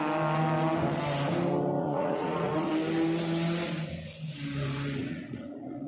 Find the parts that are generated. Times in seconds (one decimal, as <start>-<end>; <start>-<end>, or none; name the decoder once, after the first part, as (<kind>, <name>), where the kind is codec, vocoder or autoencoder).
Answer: 1.8-2.7 (vocoder, Vocos); 5.0-5.9